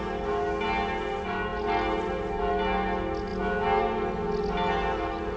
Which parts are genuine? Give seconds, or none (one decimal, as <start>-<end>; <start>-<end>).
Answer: 0.0-5.4